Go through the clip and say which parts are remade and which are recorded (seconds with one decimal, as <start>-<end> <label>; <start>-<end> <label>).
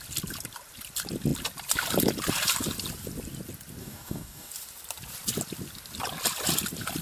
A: 0.0-3.8 recorded; 3.8-4.5 remade; 4.5-7.0 recorded